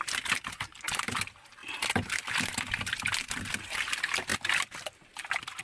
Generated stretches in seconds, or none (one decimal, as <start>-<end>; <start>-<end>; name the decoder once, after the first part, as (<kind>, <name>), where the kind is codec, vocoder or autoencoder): 1.6-3.4 (vocoder, BigVGAN v2); 4.3-5.6